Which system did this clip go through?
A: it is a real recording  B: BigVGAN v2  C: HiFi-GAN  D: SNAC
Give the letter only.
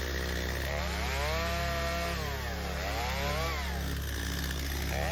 A